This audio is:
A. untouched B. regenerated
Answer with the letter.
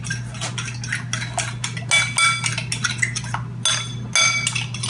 A